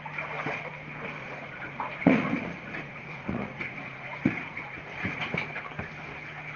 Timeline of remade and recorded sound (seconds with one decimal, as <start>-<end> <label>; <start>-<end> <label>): 0.0-1.2 recorded; 1.2-5.2 remade; 5.2-6.6 recorded